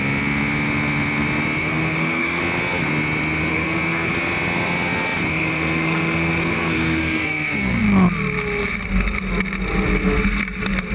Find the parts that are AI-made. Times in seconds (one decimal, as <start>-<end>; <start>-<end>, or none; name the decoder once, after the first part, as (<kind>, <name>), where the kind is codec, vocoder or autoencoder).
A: 1.6-2.4 (codec, SNAC); 3.5-4.1; 5.3-7.8